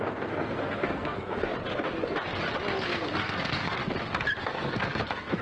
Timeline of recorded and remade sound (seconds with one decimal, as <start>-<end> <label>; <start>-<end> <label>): 0.0-1.5 remade; 1.5-2.9 recorded; 2.9-3.8 remade; 3.8-4.4 recorded; 4.4-5.4 remade